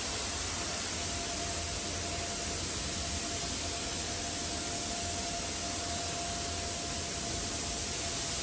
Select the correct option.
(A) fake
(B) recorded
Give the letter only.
B